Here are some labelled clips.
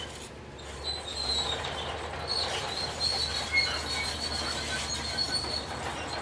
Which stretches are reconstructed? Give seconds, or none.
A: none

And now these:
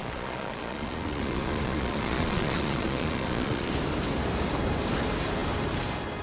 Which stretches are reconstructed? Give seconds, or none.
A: 0.0-3.7

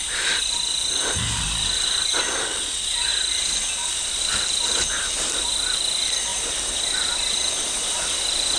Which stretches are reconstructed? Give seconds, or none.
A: none

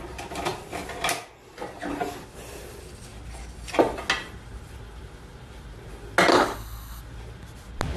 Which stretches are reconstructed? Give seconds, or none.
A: 6.3-7.0

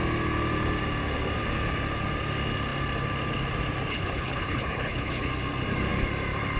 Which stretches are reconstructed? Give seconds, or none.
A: 3.9-5.3

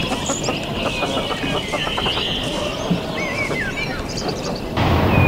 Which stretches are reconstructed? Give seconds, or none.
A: none

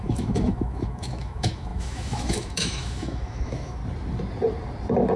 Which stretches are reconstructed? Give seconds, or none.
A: 0.0-3.8